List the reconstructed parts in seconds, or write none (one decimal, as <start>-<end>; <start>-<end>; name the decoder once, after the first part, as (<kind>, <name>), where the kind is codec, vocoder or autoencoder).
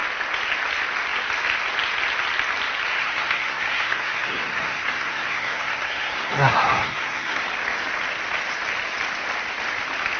3.0-7.4 (codec, SNAC)